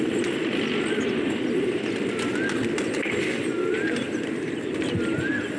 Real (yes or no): yes